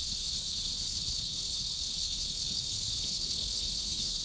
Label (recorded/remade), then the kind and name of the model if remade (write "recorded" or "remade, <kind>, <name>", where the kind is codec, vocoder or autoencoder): remade, codec, HILCodec